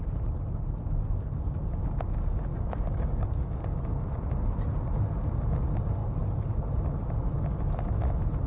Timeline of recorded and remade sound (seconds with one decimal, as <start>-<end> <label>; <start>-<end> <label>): 0.0-2.5 recorded; 2.5-3.8 remade; 3.8-8.5 recorded

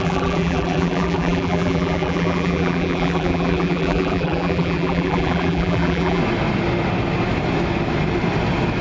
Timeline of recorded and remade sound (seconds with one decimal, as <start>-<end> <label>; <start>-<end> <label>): 0.0-6.2 remade; 6.2-8.8 recorded

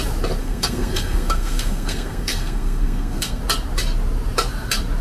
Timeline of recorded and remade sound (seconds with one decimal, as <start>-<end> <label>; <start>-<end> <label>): 0.0-0.4 recorded; 0.4-3.4 remade; 3.4-5.0 recorded

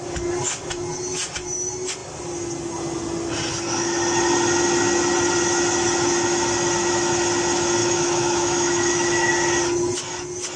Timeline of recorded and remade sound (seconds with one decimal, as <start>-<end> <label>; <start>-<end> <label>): 0.0-7.8 recorded; 7.8-9.3 remade; 9.3-10.6 recorded

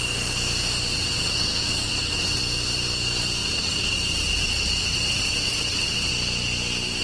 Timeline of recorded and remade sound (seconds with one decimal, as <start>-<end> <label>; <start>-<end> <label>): 0.0-0.9 recorded; 0.9-2.4 remade; 2.4-3.4 recorded; 3.4-6.1 remade; 6.1-7.0 recorded